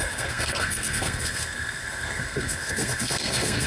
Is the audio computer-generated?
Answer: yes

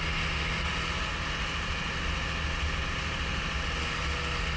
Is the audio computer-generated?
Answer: no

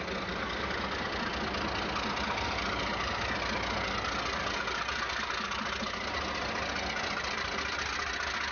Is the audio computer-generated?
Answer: no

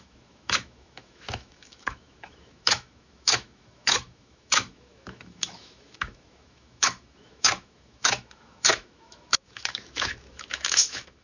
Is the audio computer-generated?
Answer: yes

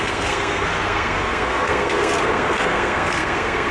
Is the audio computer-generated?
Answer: yes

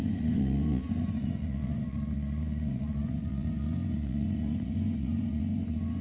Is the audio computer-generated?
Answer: yes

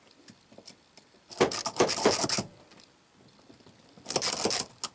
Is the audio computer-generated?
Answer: no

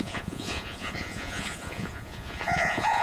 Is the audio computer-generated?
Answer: yes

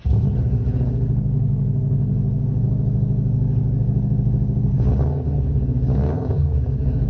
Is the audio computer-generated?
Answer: yes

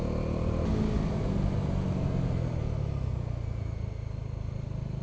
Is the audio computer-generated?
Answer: no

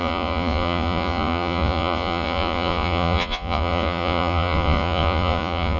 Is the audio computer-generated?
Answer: yes